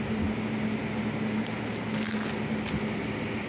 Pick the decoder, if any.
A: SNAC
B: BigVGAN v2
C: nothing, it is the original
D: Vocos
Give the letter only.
C